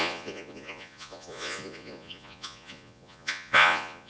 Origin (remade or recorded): remade